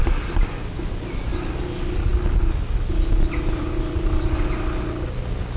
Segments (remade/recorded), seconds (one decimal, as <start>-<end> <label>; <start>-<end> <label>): 0.0-5.6 recorded

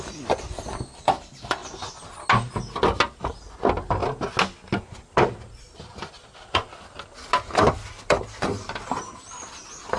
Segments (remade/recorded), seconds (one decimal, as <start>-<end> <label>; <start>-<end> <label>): 0.0-1.6 remade; 1.6-3.2 recorded; 3.2-4.0 remade; 4.0-7.7 recorded; 7.7-10.0 remade